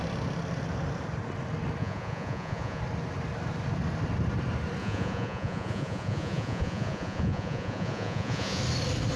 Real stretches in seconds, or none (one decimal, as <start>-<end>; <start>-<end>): 0.0-1.8; 2.8-4.8; 8.6-9.2